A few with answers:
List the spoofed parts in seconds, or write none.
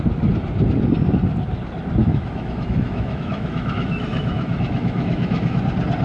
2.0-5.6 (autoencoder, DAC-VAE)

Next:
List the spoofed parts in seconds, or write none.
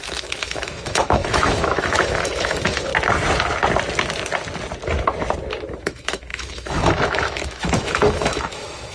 0.0-2.9 (autoencoder, DAC-VAE); 5.8-8.9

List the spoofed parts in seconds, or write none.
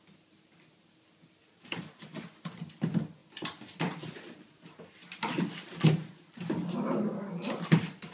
none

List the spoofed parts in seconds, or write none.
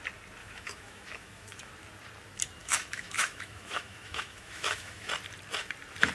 0.4-1.7 (autoencoder, DAC-VAE); 2.6-5.1